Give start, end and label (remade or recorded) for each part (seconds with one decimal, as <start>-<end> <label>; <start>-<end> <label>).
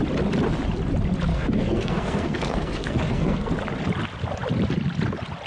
0.0-1.3 recorded; 1.3-3.5 remade; 3.5-5.5 recorded